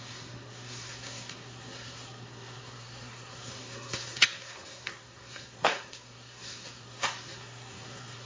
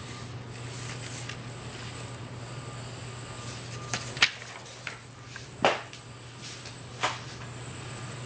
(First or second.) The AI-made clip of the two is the first